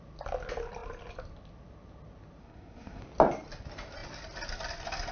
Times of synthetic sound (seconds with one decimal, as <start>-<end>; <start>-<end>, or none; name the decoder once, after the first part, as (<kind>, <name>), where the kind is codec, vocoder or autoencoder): 2.4-3.0 (codec, SNAC)